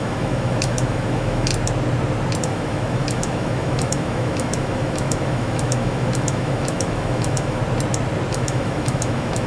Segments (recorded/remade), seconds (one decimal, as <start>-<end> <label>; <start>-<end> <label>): 0.0-1.5 remade; 1.5-2.4 recorded; 2.4-7.6 remade; 7.6-8.3 recorded; 8.3-9.5 remade